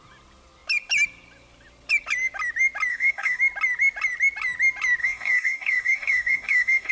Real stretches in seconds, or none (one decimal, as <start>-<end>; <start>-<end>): 0.0-2.9; 3.4-5.0